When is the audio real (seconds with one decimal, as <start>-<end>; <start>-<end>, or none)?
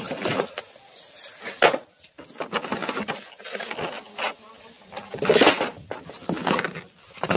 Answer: 0.0-7.4